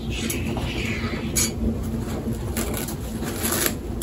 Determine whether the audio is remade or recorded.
recorded